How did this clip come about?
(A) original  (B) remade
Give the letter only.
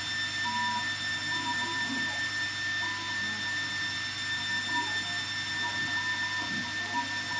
A